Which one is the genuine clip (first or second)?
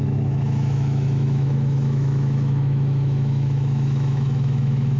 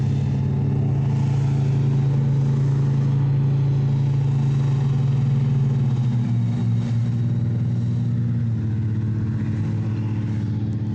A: second